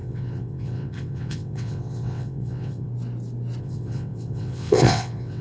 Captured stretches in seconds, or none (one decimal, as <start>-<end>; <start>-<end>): 2.9-3.6